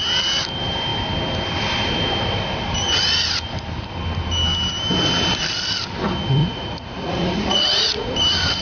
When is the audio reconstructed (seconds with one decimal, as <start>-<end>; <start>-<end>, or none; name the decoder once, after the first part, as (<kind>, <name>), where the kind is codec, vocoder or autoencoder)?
6.4-8.1 (vocoder, Vocos)